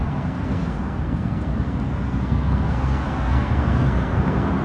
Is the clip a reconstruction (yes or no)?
yes